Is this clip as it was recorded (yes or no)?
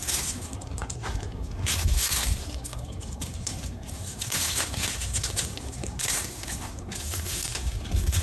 no